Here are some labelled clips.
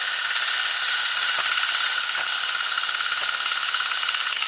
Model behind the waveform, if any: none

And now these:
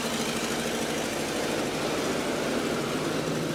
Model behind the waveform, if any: none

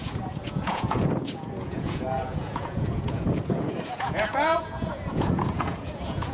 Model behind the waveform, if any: vocoder, Vocos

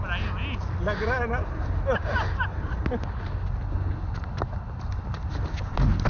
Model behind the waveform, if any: none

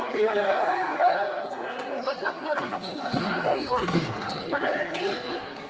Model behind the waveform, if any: codec, SNAC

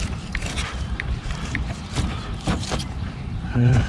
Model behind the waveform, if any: vocoder, BigVGAN v2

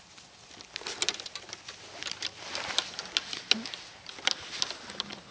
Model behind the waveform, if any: none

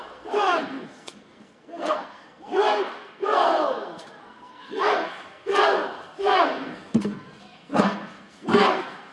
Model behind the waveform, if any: codec, SNAC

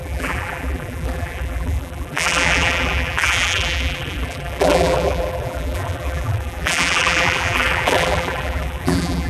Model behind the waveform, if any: vocoder, BigVGAN v2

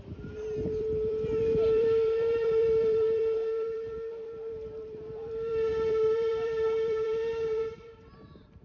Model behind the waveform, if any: vocoder, BigVGAN v2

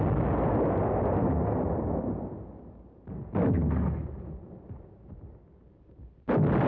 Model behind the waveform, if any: none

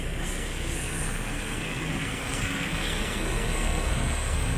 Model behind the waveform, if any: codec, SNAC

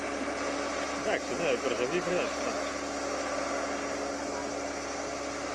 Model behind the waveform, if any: none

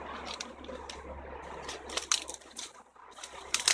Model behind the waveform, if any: none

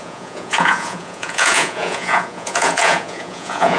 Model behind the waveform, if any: vocoder, Vocos